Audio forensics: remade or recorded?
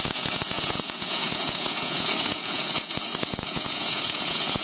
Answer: remade